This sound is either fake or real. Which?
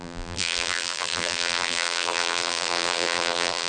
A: fake